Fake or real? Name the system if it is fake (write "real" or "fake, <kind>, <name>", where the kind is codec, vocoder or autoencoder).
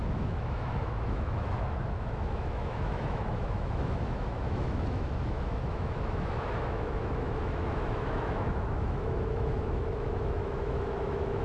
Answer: fake, autoencoder, DAC-VAE